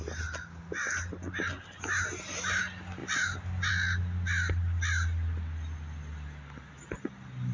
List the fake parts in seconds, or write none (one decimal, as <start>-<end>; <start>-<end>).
none